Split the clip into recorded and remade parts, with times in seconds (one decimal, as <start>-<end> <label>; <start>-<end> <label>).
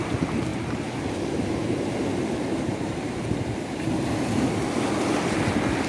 0.0-0.5 recorded; 0.5-3.8 remade; 3.8-5.9 recorded